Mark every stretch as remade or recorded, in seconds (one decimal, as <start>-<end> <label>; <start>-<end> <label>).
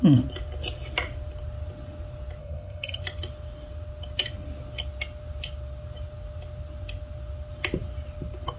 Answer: 0.0-2.4 recorded; 2.4-3.0 remade; 3.0-8.6 recorded